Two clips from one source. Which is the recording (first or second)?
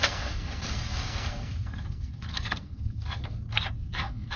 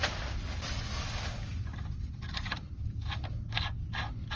second